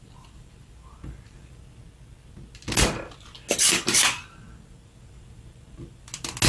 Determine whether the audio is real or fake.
real